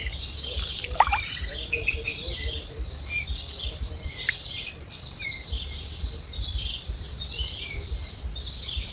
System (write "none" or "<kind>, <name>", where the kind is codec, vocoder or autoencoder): vocoder, BigVGAN v2